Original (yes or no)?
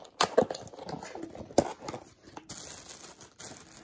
yes